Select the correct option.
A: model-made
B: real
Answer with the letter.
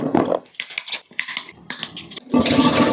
B